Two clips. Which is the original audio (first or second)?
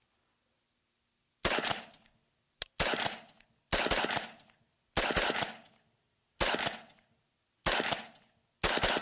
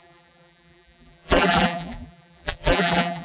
first